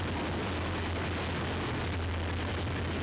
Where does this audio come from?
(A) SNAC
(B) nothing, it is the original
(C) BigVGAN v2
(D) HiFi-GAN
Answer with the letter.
B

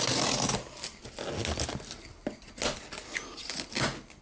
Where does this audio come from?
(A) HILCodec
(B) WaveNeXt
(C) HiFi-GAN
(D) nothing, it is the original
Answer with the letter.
D